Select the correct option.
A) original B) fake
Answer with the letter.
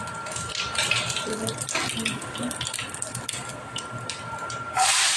A